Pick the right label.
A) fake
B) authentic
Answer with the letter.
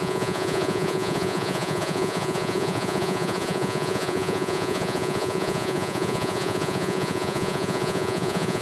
A